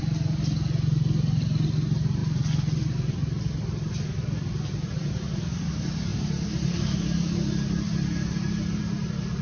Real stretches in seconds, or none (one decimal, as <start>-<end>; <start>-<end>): 0.0-9.4